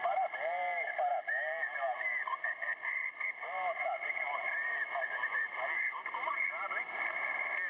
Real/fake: real